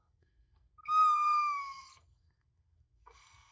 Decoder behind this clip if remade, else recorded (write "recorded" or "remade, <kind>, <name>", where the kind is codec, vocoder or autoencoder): remade, codec, SNAC